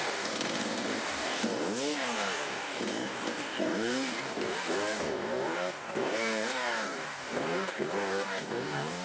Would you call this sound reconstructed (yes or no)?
yes